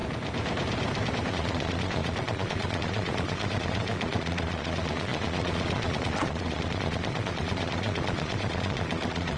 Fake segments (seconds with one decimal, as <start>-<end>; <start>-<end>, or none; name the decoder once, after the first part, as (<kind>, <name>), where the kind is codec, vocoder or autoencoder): 1.3-9.4 (vocoder, Vocos)